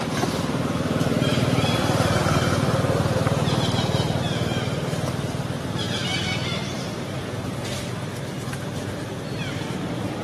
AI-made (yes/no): yes